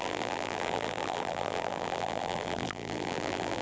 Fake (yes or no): yes